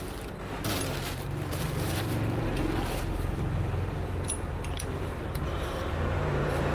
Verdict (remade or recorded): remade